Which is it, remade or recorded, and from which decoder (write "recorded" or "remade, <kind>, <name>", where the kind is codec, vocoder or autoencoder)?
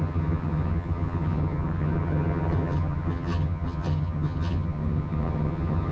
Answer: remade, vocoder, HiFi-GAN